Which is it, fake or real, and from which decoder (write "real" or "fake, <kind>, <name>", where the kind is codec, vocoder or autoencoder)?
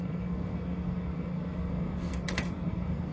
fake, codec, SNAC